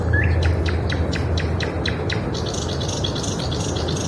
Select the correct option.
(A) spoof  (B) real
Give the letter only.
B